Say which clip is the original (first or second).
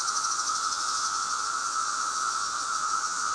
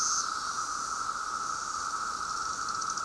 second